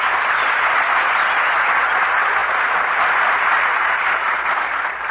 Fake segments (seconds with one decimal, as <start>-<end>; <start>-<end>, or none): 0.0-5.1